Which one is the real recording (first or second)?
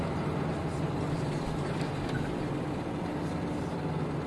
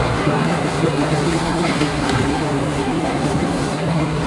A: first